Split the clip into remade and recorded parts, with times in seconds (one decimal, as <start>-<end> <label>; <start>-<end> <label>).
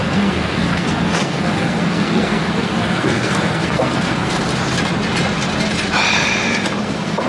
0.0-4.5 remade; 4.5-6.8 recorded; 6.8-7.3 remade